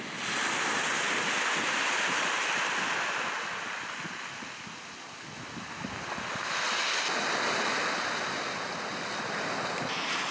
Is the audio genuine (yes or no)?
yes